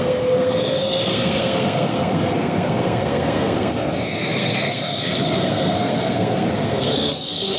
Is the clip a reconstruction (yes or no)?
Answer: yes